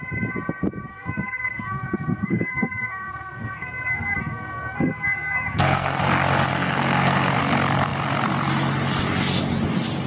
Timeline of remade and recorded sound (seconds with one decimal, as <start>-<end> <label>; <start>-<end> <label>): 0.0-0.9 recorded; 0.9-6.0 remade; 6.0-6.5 recorded; 6.5-7.4 remade; 7.4-10.1 recorded